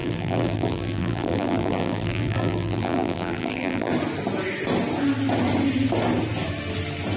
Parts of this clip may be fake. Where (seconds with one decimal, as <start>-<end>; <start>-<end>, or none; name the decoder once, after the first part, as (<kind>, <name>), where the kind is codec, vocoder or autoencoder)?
0.0-3.9 (vocoder, BigVGAN v2)